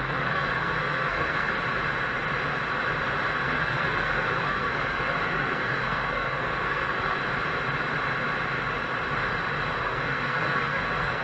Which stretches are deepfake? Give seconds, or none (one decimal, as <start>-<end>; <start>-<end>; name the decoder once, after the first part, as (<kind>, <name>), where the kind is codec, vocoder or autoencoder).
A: 0.0-1.5 (codec, SNAC); 3.3-7.2; 9.8-11.2

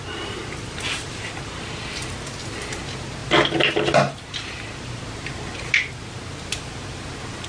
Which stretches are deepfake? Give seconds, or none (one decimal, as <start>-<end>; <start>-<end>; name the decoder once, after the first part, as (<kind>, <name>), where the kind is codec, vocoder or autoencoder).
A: none

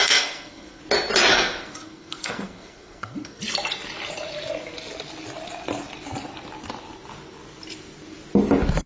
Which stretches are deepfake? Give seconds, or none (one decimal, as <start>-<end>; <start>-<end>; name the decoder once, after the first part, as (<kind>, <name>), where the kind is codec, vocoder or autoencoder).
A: 0.0-0.8 (codec, SNAC); 1.3-3.4

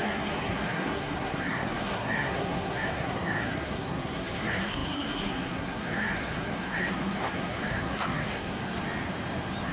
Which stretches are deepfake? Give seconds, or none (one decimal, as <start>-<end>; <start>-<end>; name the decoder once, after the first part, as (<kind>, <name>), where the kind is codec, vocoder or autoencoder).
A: 0.0-8.6 (codec, SNAC)

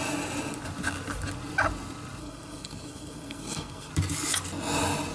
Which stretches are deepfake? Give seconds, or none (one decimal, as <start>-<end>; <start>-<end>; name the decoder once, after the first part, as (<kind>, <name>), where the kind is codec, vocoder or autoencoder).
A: 2.2-3.9 (codec, SNAC)

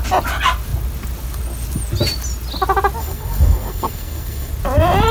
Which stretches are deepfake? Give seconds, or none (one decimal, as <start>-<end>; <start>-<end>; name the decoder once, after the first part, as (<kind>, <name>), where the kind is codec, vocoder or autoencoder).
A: 3.0-4.5 (codec, SNAC)

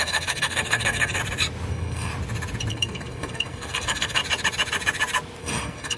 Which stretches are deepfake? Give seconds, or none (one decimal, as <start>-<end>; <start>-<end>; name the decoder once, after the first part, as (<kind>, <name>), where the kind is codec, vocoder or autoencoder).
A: 0.0-1.2 (codec, SNAC); 1.7-2.1; 2.7-4.2; 5.4-6.0